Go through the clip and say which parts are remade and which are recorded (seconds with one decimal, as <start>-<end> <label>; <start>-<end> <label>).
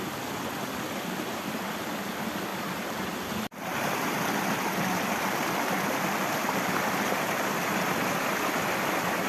0.0-2.5 recorded; 2.5-3.1 remade; 3.1-9.3 recorded